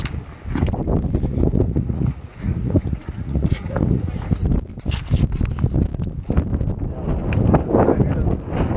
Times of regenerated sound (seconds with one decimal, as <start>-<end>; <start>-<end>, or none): 1.3-4.1